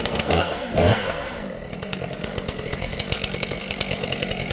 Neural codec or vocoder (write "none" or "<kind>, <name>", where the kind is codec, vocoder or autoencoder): codec, SNAC